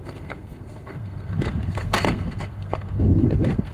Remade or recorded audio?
remade